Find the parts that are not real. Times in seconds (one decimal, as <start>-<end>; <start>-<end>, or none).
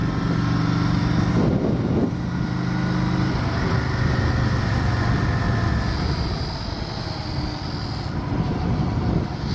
none